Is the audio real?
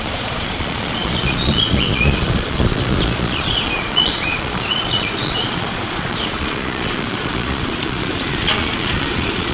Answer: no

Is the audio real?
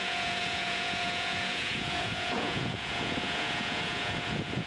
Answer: no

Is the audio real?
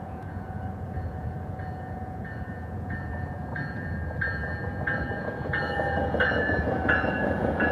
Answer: no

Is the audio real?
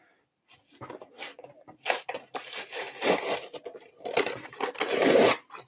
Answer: yes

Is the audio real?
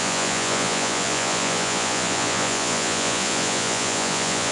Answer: no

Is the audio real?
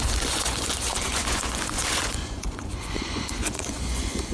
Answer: no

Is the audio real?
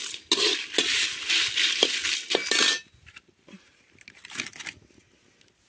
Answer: yes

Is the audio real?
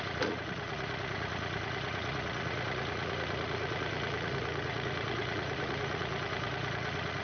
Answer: no